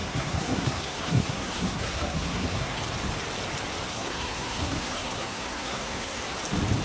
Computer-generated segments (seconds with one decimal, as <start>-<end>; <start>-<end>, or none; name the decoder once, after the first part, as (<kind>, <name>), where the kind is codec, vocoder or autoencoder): 0.0-2.8 (codec, SNAC); 3.9-6.2